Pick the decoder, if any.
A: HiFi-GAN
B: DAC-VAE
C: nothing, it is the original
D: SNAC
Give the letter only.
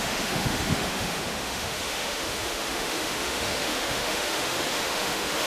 B